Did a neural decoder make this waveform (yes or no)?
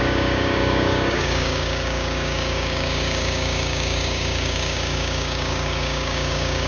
yes